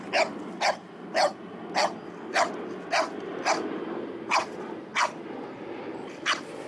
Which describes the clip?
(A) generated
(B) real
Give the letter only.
B